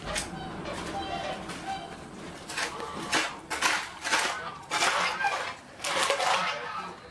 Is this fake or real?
real